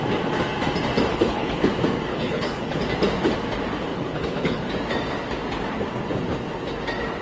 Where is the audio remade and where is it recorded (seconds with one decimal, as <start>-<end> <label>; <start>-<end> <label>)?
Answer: 0.0-1.1 recorded; 1.1-1.7 remade; 1.7-2.1 recorded; 2.1-2.8 remade; 2.8-3.9 recorded; 3.9-4.7 remade; 4.7-7.2 recorded